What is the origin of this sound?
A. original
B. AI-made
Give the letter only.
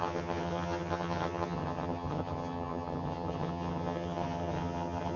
B